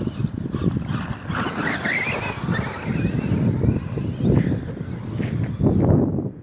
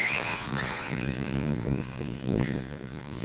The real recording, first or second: first